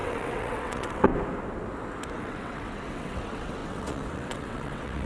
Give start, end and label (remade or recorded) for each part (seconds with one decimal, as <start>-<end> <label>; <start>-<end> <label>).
0.0-1.1 remade; 1.1-2.2 recorded; 2.2-5.1 remade